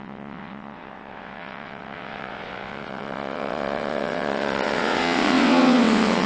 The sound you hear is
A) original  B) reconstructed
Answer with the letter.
B